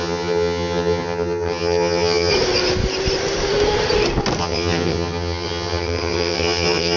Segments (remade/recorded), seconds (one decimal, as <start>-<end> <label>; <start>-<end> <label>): 0.0-2.3 remade; 2.3-4.4 recorded; 4.4-7.0 remade

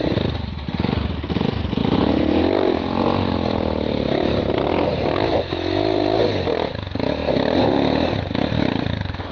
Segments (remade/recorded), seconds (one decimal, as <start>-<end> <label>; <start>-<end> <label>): 0.0-9.3 recorded

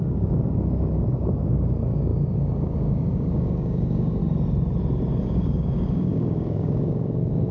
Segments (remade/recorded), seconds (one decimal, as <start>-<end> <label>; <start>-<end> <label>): 0.0-4.2 remade; 4.2-5.2 recorded; 5.2-7.5 remade

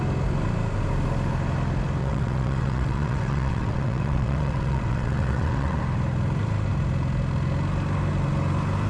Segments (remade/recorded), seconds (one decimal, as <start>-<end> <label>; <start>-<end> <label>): 0.0-2.0 recorded; 2.0-5.8 remade; 5.8-8.9 recorded

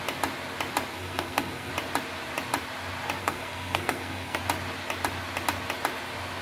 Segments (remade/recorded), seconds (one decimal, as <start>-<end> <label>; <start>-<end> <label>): 0.0-0.9 recorded; 0.9-1.7 remade; 1.7-3.2 recorded; 3.2-4.4 remade; 4.4-6.4 recorded